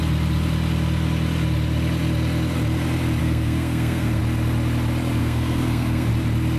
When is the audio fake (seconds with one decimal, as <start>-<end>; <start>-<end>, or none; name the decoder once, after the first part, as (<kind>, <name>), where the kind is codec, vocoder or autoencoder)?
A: 3.2-4.2 (codec, SNAC); 5.2-6.1